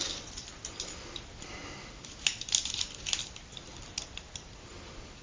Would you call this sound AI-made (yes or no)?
no